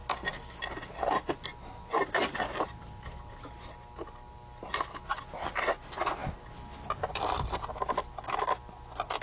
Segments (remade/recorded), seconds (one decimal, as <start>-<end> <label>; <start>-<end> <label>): 0.0-9.2 recorded